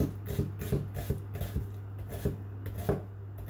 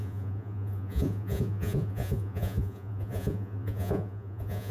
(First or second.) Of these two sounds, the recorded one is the first